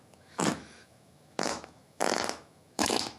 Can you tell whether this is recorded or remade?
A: remade